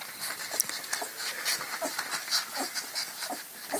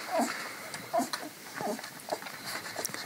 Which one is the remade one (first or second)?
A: second